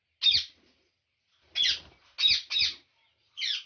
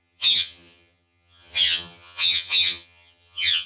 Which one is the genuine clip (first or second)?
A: first